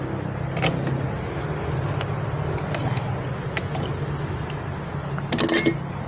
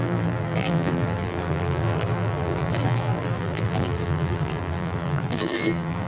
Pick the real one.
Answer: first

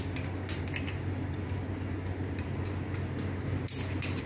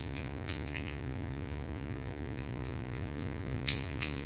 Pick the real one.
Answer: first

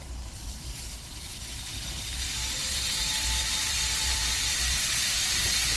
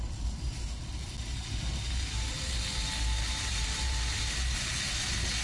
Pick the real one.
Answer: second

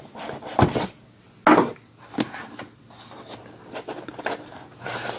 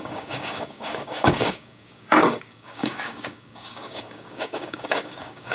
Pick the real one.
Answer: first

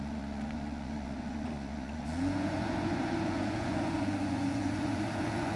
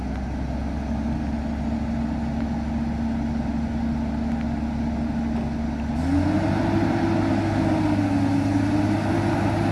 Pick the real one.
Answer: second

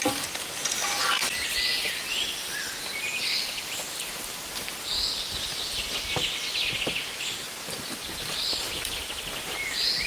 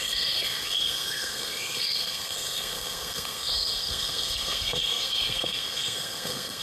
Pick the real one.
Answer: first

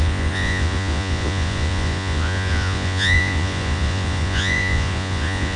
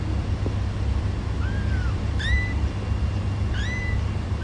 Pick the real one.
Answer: second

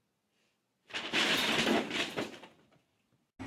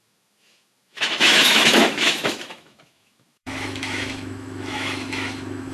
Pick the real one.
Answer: first